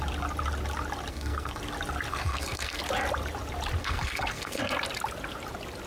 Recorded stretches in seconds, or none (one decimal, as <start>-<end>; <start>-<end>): 0.0-1.1; 1.6-2.1; 2.8-3.8; 4.6-5.9